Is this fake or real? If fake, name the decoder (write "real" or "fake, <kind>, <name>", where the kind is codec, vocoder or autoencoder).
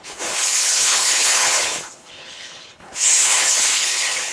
fake, codec, HILCodec